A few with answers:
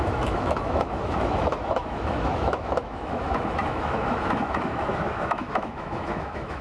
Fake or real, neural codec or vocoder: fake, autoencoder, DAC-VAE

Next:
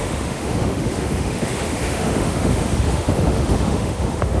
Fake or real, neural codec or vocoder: fake, autoencoder, DAC-VAE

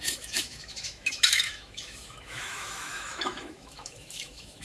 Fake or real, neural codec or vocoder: fake, autoencoder, DAC-VAE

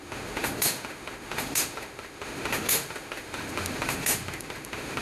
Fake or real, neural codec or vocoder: fake, autoencoder, DAC-VAE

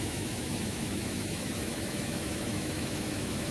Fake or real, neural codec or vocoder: fake, autoencoder, DAC-VAE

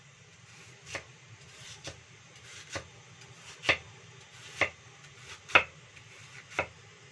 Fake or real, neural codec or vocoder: real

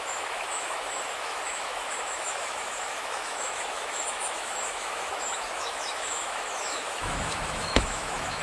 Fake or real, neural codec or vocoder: fake, autoencoder, DAC-VAE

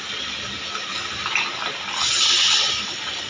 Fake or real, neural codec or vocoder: real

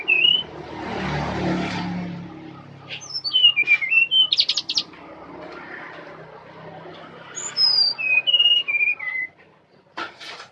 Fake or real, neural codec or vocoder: real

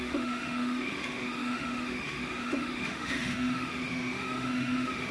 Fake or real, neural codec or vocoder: fake, autoencoder, DAC-VAE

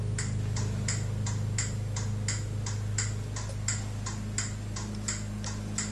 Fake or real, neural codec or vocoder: real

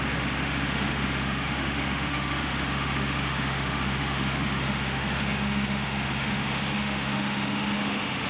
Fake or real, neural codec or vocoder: fake, autoencoder, DAC-VAE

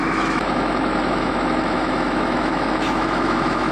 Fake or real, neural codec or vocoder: fake, autoencoder, DAC-VAE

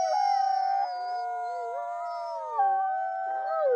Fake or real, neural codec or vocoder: real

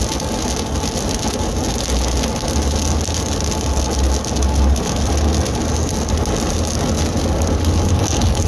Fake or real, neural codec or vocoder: real